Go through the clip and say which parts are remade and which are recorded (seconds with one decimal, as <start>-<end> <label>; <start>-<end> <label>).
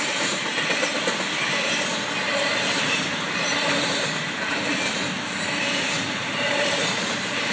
0.0-0.5 remade; 0.5-2.3 recorded; 2.3-7.5 remade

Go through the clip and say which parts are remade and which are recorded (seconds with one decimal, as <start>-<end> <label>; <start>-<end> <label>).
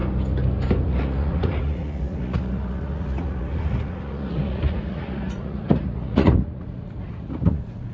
0.0-0.8 recorded; 0.8-7.9 remade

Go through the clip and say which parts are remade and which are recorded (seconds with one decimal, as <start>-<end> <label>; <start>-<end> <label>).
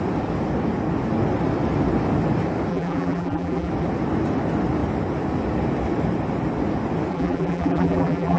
0.0-2.7 recorded; 2.7-3.7 remade; 3.7-7.1 recorded; 7.1-8.4 remade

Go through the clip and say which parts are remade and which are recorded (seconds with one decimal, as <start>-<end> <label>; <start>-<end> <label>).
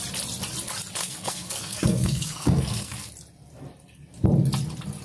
0.0-1.0 recorded; 1.0-3.1 remade; 3.1-5.0 recorded